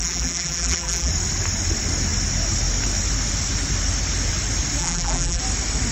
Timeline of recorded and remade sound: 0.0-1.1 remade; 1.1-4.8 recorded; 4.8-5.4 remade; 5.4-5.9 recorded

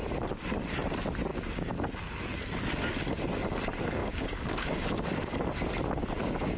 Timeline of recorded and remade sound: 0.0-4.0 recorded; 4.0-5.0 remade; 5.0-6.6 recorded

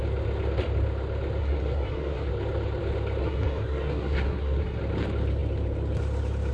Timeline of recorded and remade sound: 0.0-1.4 recorded; 1.4-2.3 remade; 2.3-3.2 recorded; 3.2-4.8 remade; 4.8-6.5 recorded